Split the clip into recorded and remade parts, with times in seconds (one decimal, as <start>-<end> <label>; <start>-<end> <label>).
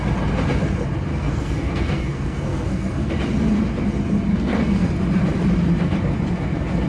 0.0-1.1 recorded; 1.1-3.1 remade; 3.1-4.3 recorded; 4.3-4.9 remade; 4.9-6.9 recorded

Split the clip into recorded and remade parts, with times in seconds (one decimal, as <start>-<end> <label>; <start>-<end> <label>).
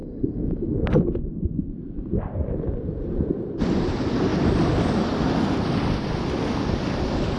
0.0-7.4 recorded